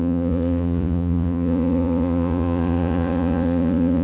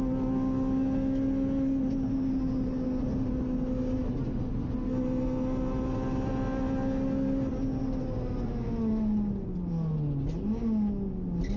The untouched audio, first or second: second